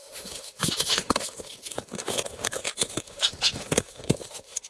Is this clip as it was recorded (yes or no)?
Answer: no